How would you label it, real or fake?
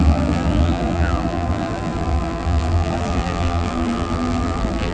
fake